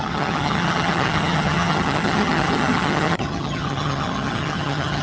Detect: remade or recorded remade